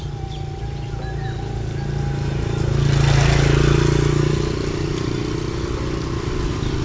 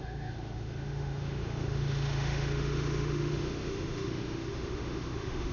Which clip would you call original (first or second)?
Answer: first